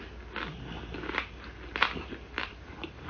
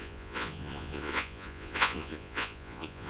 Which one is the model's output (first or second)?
second